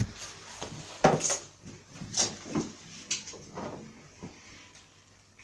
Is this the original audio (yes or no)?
yes